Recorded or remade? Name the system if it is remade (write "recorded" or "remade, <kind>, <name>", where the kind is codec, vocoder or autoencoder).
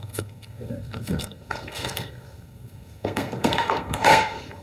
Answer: remade, codec, SNAC